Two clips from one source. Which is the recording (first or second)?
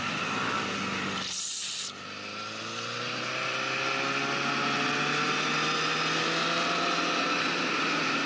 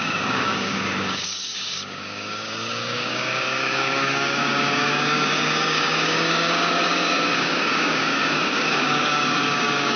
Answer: first